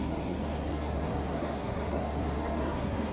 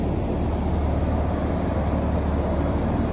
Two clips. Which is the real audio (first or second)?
second